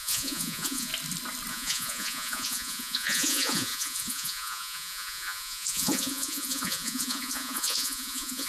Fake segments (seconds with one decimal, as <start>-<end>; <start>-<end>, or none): 0.0-0.9; 1.5-8.5